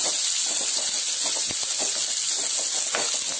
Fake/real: real